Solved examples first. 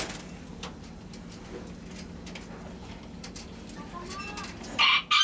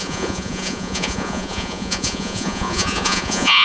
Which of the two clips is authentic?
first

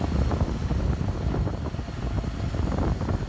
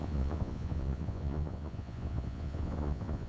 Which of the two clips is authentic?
first